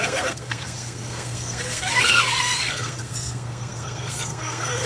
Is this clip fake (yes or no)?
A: yes